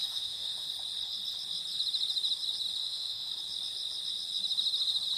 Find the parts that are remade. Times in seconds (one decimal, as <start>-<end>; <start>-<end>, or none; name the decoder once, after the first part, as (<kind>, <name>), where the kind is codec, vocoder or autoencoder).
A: 0.0-0.7 (autoencoder, DAC-VAE); 2.8-3.3